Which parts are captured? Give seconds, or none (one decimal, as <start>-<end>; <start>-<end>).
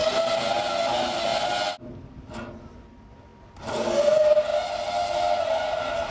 0.0-6.1